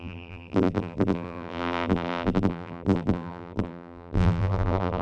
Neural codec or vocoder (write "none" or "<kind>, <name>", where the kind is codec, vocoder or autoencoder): vocoder, BigVGAN v2